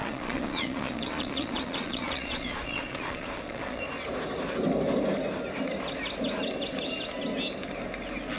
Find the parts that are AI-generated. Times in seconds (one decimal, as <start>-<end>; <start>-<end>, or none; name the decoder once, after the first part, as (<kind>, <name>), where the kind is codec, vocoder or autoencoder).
0.0-3.8 (vocoder, Vocos)